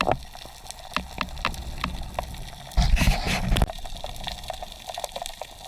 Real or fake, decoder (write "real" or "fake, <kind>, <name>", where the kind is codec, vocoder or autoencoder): real